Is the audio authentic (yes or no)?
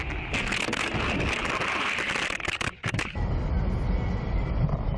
yes